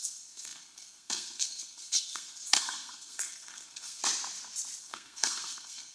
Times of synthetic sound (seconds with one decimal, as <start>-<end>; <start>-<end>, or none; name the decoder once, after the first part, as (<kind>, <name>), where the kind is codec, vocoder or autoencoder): 0.0-4.0 (codec, SNAC); 4.8-5.9